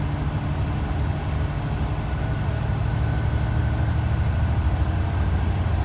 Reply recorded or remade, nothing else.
recorded